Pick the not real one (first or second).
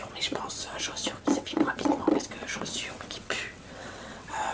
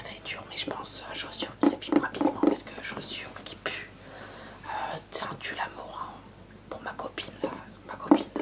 first